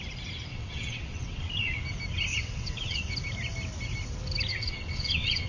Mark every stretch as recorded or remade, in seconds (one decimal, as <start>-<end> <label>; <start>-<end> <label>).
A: 0.0-0.5 recorded; 0.5-1.8 remade; 1.8-2.3 recorded; 2.3-3.1 remade; 3.1-4.5 recorded; 4.5-5.5 remade